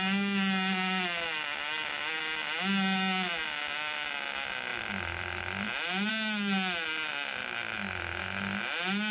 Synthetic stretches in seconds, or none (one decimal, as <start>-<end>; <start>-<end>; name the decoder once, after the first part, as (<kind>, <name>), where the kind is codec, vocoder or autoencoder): 4.7-6.1 (vocoder, BigVGAN v2); 7.4-8.2